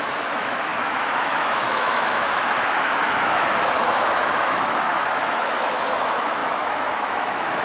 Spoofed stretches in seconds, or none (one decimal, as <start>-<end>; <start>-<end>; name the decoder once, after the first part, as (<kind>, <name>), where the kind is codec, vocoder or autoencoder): 0.0-7.6 (autoencoder, DAC-VAE)